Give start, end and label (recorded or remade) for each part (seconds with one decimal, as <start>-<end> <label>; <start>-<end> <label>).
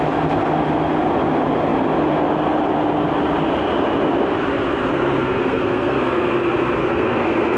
0.0-4.9 recorded; 4.9-6.3 remade; 6.3-6.8 recorded; 6.8-7.6 remade